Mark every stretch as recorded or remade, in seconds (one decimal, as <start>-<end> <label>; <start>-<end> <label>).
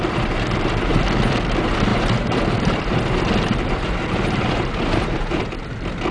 0.0-1.9 recorded; 1.9-5.6 remade; 5.6-6.1 recorded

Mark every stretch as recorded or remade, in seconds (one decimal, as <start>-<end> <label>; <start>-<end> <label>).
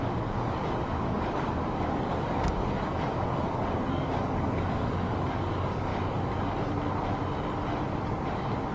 0.0-5.9 remade; 5.9-8.7 recorded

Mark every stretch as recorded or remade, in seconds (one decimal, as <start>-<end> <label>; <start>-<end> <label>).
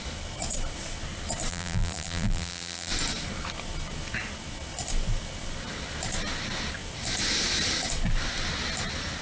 0.0-1.5 recorded; 1.5-2.9 remade; 2.9-9.2 recorded